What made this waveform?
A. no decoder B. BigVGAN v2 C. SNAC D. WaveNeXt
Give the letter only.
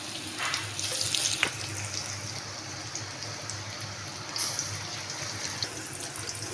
A